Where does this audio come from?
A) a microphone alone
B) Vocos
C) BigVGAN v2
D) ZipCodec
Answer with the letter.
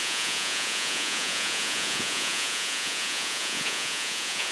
B